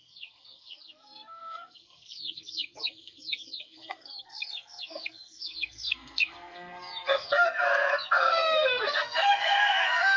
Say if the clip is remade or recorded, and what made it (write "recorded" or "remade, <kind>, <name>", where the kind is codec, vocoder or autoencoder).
remade, codec, SNAC